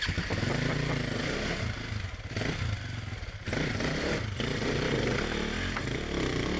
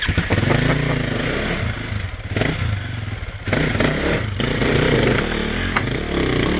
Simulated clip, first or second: first